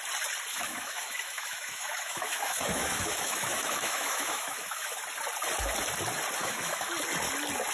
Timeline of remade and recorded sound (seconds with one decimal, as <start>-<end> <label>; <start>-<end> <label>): 0.0-0.5 recorded; 0.5-5.0 remade; 5.0-6.4 recorded; 6.4-6.9 remade; 6.9-7.7 recorded